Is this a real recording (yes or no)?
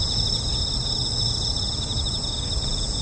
yes